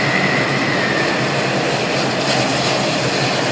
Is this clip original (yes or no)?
yes